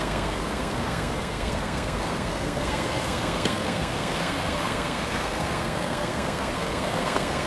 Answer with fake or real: fake